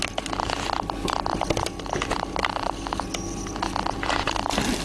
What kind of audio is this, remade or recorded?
recorded